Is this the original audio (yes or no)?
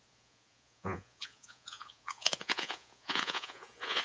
no